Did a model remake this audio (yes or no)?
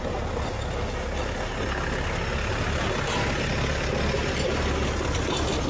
no